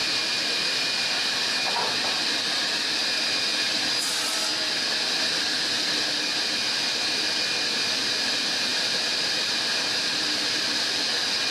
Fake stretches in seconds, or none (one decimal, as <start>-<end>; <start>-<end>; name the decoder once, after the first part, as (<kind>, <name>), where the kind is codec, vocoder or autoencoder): 0.0-1.0 (vocoder, BigVGAN v2); 8.7-10.5

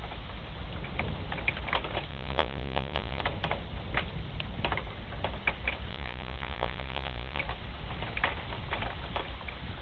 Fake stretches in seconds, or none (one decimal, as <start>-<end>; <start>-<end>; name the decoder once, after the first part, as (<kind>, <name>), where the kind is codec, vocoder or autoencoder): 2.1-3.2 (vocoder, Vocos); 5.9-7.4

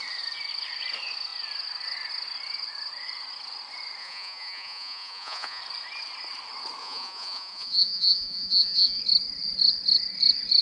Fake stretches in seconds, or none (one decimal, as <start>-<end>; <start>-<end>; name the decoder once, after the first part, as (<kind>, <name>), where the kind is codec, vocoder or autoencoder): 4.0-5.6 (vocoder, Vocos); 6.8-9.0